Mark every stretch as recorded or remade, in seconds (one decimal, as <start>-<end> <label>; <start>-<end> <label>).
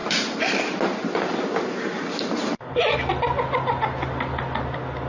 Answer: 0.0-3.1 remade; 3.1-5.1 recorded